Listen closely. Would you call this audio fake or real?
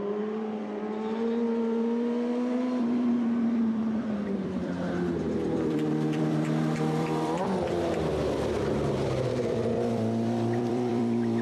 fake